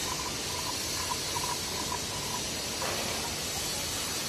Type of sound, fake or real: real